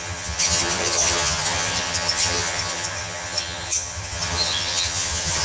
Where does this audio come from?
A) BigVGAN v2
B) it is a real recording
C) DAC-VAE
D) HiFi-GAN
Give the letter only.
D